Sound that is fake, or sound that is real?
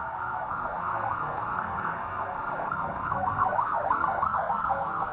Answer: fake